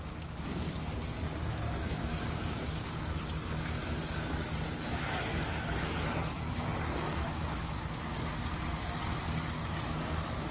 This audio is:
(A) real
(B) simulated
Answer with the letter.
B